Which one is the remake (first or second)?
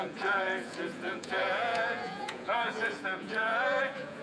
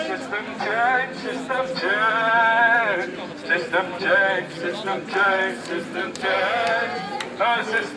first